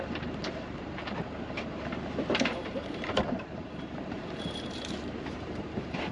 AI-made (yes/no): yes